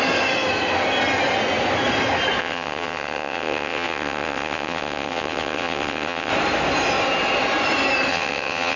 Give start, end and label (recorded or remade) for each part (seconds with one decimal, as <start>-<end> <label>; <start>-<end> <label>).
0.0-2.4 recorded; 2.4-6.3 remade; 6.3-8.1 recorded; 8.1-8.8 remade